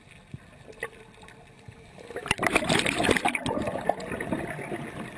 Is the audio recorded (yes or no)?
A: yes